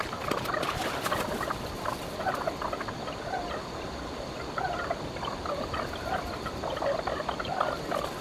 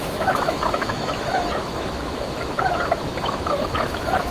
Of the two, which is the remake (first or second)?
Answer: second